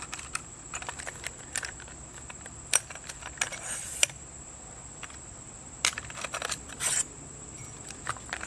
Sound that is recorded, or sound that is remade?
remade